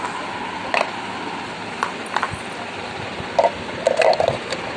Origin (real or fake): real